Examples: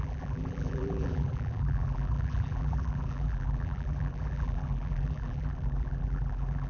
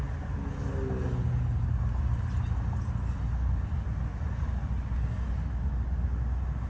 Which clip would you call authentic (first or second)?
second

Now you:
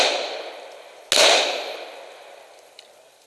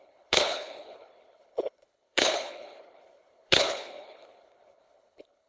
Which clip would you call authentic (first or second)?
first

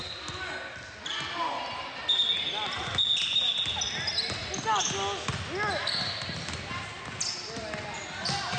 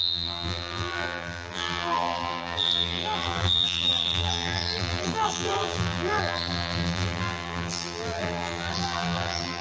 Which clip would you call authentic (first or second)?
first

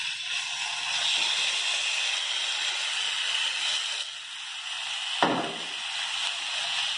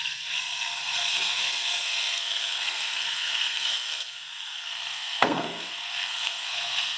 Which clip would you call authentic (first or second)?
first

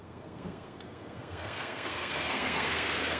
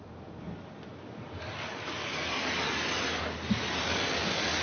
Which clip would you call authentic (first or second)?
second